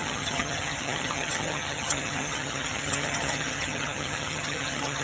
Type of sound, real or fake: fake